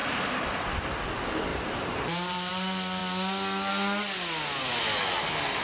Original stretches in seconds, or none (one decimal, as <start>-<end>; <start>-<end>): 0.0-1.5; 2.5-5.6